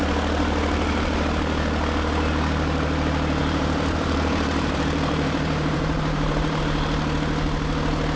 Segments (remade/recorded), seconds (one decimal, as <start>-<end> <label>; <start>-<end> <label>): 0.0-3.4 recorded; 3.4-6.6 remade; 6.6-8.2 recorded

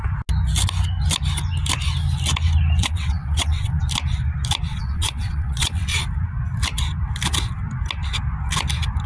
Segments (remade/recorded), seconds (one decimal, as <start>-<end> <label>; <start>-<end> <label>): 0.0-2.8 recorded; 2.8-3.8 remade; 3.8-4.7 recorded; 4.7-6.0 remade; 6.0-9.1 recorded

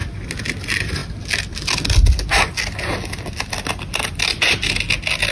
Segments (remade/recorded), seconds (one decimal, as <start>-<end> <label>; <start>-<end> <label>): 0.0-5.3 recorded

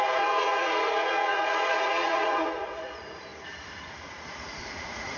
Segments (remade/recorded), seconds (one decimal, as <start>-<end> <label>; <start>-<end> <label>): 0.0-5.2 remade